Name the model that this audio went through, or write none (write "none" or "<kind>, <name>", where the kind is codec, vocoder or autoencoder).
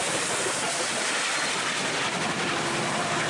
none